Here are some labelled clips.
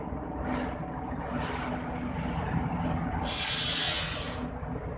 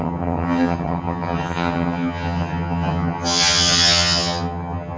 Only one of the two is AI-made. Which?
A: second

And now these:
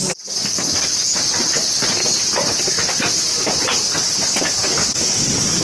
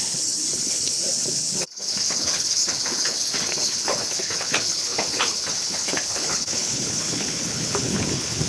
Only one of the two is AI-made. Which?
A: second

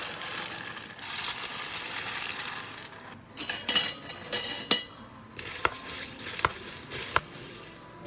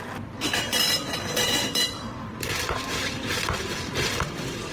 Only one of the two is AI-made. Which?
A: second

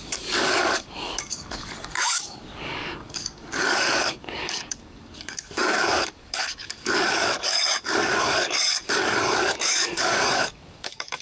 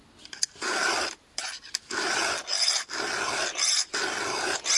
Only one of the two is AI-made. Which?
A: first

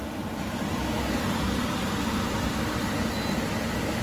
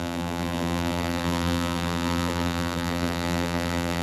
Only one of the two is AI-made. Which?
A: second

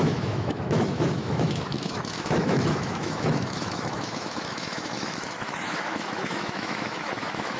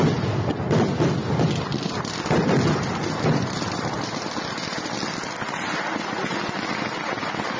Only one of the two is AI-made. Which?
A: first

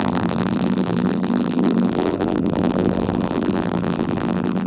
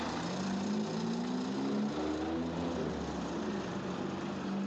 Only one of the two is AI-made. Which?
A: first